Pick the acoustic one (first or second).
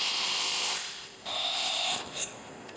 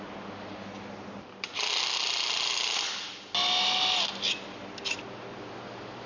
second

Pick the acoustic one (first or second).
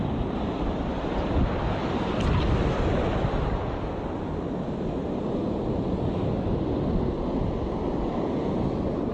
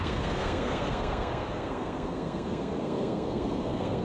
first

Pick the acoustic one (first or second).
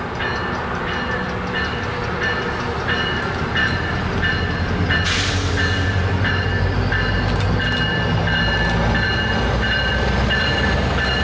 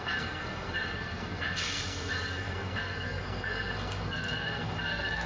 first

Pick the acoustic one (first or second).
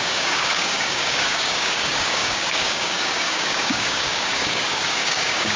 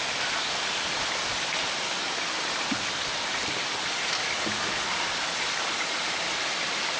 second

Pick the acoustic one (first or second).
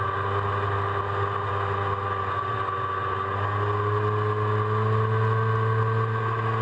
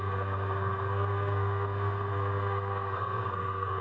first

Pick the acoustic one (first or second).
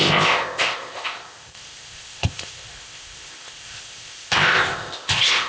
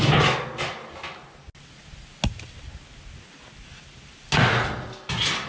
second